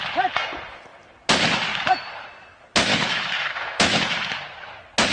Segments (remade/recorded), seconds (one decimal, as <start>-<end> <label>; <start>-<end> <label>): 0.0-2.9 recorded; 2.9-4.0 remade; 4.0-5.1 recorded